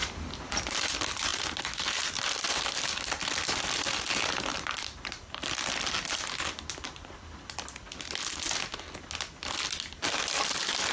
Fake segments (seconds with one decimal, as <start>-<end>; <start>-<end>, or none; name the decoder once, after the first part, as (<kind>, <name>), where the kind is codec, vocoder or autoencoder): 1.3-2.1 (vocoder, BigVGAN v2); 4.5-7.9